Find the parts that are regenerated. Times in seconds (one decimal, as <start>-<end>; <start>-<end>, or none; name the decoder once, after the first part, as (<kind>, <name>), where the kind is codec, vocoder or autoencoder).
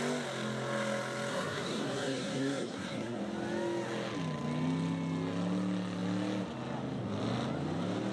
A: 1.3-3.2 (codec, SNAC)